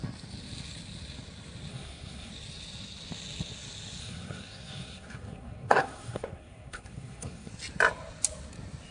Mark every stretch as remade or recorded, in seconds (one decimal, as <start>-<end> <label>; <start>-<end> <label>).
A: 0.0-1.7 recorded; 1.7-2.3 remade; 2.3-4.0 recorded; 4.0-7.5 remade; 7.5-8.9 recorded